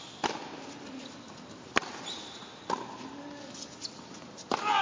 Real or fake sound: real